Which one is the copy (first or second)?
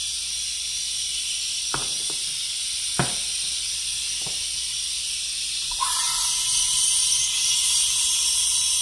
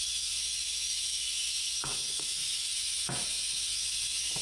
second